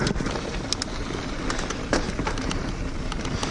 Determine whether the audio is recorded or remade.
recorded